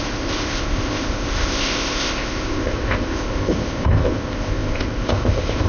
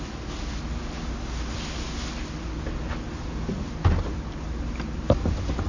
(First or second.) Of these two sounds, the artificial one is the first